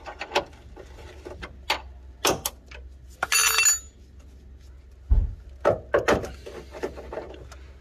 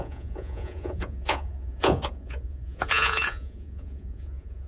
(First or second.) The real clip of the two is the first